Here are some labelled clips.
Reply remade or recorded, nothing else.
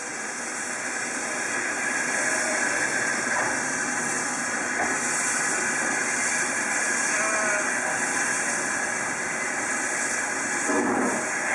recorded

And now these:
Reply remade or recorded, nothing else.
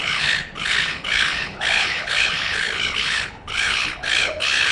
remade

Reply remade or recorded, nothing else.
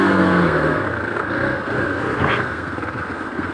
remade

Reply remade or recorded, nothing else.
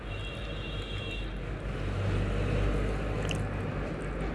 recorded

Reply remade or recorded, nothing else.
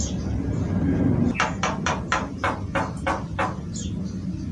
recorded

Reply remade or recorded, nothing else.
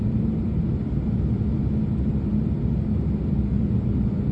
recorded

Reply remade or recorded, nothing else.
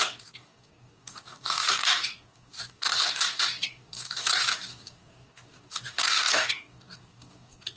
remade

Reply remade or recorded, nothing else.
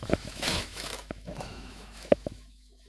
remade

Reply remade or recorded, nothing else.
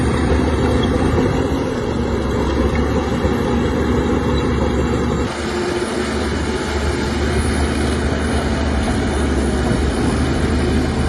recorded